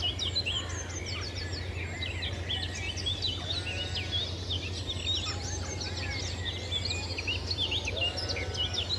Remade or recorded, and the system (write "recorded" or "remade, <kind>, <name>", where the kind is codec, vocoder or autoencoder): recorded